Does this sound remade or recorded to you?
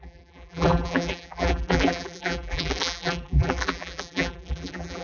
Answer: remade